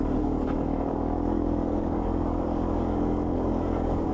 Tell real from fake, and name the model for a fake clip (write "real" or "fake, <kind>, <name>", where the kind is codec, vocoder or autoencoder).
fake, codec, DAC